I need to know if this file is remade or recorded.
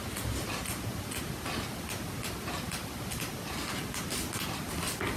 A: recorded